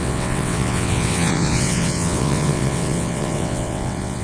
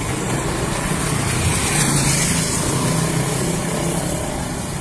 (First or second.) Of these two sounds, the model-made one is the first